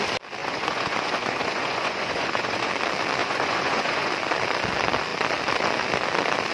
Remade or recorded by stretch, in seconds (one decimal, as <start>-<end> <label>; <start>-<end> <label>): 0.0-0.4 recorded; 0.4-2.7 remade; 2.7-3.2 recorded; 3.2-4.1 remade; 4.1-6.5 recorded